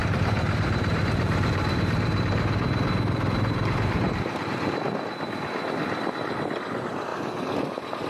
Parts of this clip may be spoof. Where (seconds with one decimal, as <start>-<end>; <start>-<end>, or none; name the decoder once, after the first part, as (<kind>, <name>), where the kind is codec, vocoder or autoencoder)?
0.0-4.8 (vocoder, BigVGAN v2)